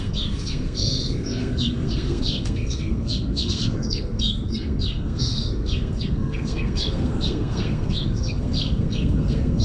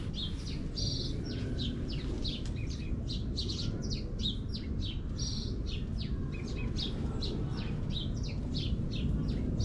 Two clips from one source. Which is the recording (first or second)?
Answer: second